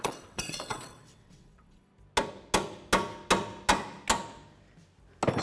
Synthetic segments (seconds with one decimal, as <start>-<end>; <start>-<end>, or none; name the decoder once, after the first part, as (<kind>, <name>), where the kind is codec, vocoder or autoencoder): 0.0-1.9 (vocoder, WaveNeXt)